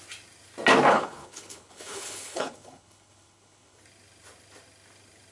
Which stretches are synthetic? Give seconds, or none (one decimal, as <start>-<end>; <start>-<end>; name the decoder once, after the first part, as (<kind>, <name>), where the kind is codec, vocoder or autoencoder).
0.9-3.8 (codec, HILCodec)

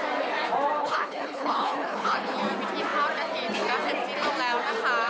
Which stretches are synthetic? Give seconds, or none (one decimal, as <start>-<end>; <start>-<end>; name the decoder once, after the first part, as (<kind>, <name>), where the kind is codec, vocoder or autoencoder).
0.8-2.4 (codec, HILCodec)

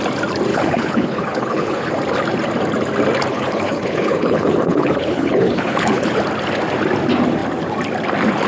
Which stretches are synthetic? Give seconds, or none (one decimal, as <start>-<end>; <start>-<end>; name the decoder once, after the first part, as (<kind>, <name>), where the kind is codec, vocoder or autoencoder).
0.5-1.9 (codec, HILCodec); 3.3-6.2